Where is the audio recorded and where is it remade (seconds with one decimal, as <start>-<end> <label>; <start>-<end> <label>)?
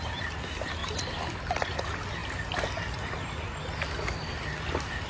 0.0-5.1 recorded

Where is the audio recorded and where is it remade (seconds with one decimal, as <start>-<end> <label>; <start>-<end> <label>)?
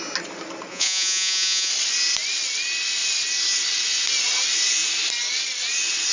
0.0-0.7 recorded; 0.7-1.7 remade; 1.7-6.1 recorded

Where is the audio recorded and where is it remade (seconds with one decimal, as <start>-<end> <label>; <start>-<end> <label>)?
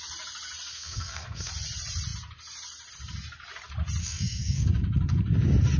0.0-0.7 recorded; 0.7-1.5 remade; 1.5-4.0 recorded; 4.0-4.7 remade; 4.7-5.8 recorded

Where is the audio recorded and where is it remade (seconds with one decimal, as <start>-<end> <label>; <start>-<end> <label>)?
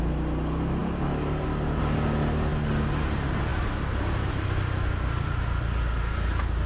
0.0-6.7 recorded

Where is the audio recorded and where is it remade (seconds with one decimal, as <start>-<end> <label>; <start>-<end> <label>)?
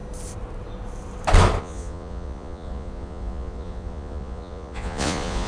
0.0-1.6 recorded; 1.6-5.5 remade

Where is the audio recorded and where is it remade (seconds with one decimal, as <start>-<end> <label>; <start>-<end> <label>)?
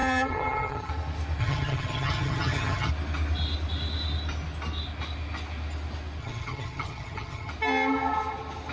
0.0-0.9 remade; 0.9-1.4 recorded; 1.4-2.9 remade; 2.9-6.2 recorded; 6.2-7.5 remade; 7.5-8.7 recorded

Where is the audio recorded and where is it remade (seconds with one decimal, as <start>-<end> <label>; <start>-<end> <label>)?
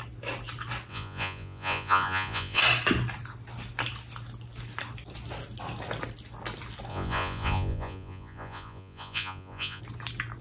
0.0-0.9 recorded; 0.9-2.6 remade; 2.6-6.9 recorded; 6.9-9.8 remade; 9.8-10.4 recorded